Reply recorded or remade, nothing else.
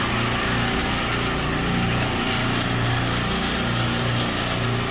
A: recorded